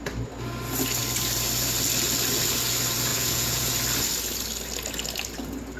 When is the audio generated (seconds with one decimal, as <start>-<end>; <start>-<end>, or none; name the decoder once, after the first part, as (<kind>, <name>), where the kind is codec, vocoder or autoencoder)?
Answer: 3.1-3.7 (vocoder, Vocos)